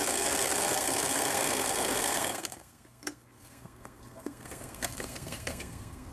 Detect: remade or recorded remade